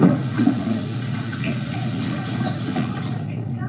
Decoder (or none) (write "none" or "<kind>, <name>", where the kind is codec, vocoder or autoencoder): vocoder, Vocos